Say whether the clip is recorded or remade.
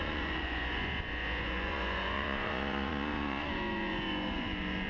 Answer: remade